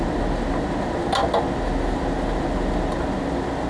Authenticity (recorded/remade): recorded